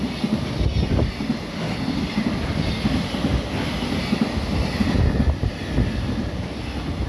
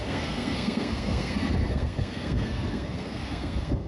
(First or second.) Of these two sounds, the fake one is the second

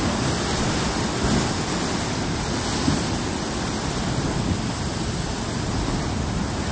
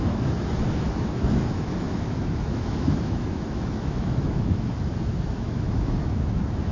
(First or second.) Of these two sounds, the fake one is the second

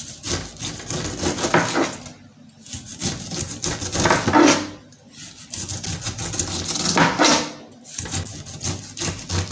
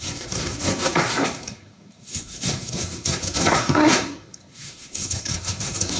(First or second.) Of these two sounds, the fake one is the second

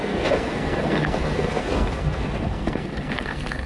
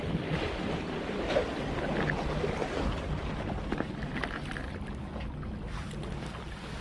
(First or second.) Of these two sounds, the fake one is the first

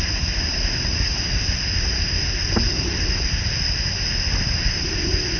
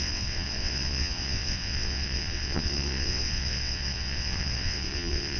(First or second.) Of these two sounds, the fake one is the second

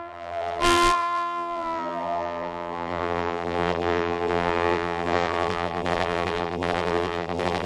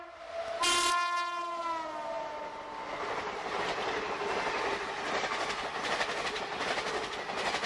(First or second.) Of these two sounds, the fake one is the first